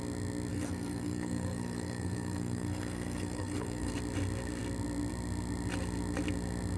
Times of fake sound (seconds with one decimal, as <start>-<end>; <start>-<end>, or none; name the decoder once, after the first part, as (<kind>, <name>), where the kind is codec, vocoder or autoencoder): 0.5-3.9 (codec, SNAC)

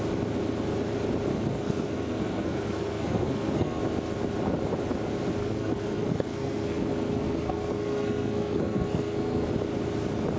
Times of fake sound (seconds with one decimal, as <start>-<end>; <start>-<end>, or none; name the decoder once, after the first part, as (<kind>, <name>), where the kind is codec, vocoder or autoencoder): 1.3-3.8 (codec, SNAC); 5.4-9.5

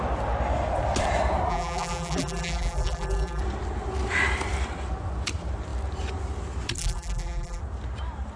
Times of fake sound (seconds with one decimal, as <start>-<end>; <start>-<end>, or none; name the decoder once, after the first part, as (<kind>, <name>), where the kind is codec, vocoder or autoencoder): 1.5-3.4 (vocoder, BigVGAN v2); 6.8-7.6